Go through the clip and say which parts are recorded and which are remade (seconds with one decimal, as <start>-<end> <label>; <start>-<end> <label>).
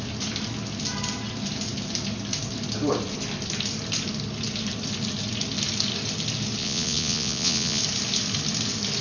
0.0-6.6 recorded; 6.6-7.8 remade; 7.8-9.0 recorded